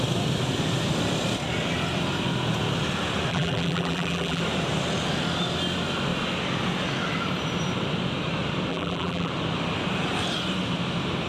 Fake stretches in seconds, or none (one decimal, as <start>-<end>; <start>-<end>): 3.3-4.4; 8.7-9.3